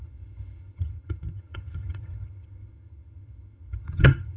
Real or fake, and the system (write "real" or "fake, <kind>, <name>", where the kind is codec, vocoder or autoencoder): fake, vocoder, HiFi-GAN